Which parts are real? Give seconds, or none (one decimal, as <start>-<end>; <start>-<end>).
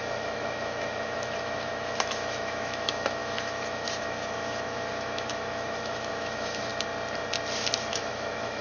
6.7-7.9